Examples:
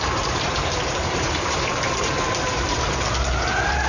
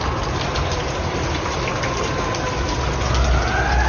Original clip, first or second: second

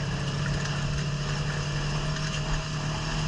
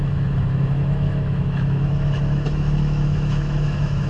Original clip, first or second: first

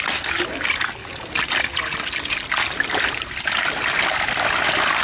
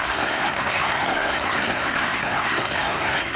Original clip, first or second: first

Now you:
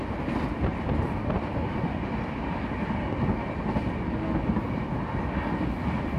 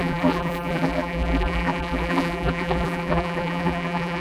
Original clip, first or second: first